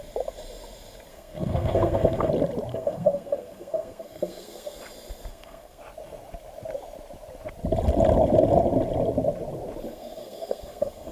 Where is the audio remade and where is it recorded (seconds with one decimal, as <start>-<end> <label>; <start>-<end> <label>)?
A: 0.0-1.1 recorded; 1.1-2.3 remade; 2.3-2.7 recorded; 2.7-4.8 remade; 4.8-5.3 recorded; 5.3-5.8 remade; 5.8-9.9 recorded; 9.9-11.1 remade